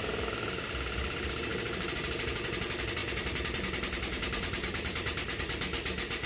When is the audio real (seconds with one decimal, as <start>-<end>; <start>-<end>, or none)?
0.0-1.5; 2.1-3.0; 5.4-6.3